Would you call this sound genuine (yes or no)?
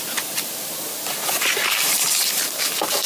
yes